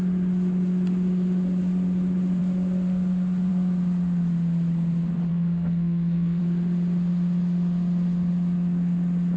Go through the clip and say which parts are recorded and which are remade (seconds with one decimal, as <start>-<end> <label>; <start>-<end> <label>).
0.0-5.3 recorded; 5.3-6.4 remade; 6.4-9.4 recorded